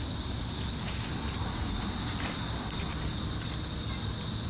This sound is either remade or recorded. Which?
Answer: recorded